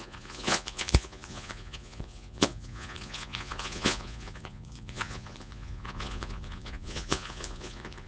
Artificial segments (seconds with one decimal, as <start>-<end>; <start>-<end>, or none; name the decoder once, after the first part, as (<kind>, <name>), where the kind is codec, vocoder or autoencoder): 0.0-8.1 (vocoder, Vocos)